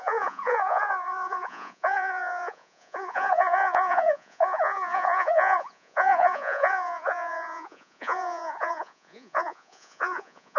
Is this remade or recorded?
remade